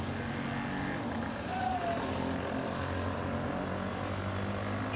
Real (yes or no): yes